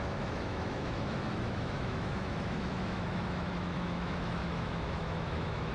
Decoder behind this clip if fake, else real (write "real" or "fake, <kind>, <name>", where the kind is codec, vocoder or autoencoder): fake, autoencoder, DAC-VAE